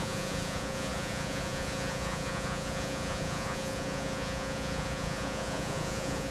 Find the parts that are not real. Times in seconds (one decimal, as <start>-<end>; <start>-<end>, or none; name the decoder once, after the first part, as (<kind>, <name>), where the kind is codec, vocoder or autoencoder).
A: 0.0-6.3 (vocoder, Vocos)